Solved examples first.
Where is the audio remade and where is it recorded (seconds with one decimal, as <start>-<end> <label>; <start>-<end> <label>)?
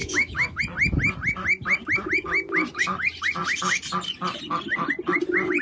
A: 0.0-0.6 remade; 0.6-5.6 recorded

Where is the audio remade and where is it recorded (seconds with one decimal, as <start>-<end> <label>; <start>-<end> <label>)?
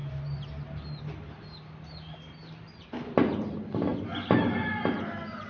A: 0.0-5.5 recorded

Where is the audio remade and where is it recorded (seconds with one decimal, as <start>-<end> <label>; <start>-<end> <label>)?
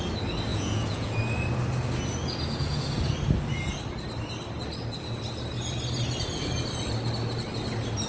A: 0.0-0.5 recorded; 0.5-1.1 remade; 1.1-2.2 recorded; 2.2-2.9 remade; 2.9-8.1 recorded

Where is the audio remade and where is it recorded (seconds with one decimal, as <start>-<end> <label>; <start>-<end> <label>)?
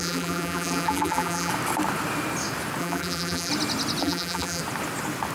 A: 0.0-1.5 remade; 1.5-2.8 recorded; 2.8-3.5 remade; 3.5-4.0 recorded; 4.0-4.6 remade; 4.6-5.3 recorded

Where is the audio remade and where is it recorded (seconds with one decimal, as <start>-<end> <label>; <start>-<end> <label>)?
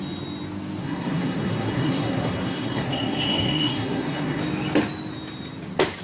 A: 0.0-0.8 recorded; 0.8-4.4 remade; 4.4-6.0 recorded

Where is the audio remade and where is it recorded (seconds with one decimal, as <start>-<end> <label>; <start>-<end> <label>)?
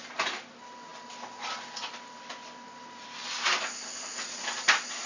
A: 0.0-5.1 recorded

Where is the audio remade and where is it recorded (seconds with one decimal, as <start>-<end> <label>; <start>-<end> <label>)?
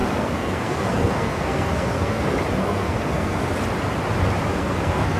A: 0.0-2.2 remade; 2.2-2.6 recorded; 2.6-3.4 remade; 3.4-4.5 recorded; 4.5-5.2 remade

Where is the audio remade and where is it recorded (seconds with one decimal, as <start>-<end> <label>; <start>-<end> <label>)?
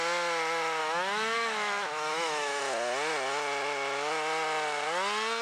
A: 0.0-0.8 recorded; 0.8-2.6 remade; 2.6-5.4 recorded